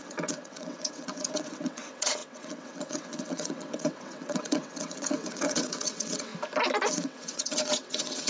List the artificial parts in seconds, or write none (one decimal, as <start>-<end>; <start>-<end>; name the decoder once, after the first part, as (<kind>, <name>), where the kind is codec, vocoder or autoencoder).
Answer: 0.0-6.3 (vocoder, WaveNeXt); 6.9-8.3